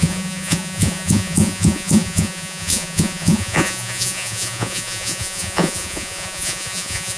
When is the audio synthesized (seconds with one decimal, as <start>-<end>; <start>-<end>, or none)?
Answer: 0.0-7.2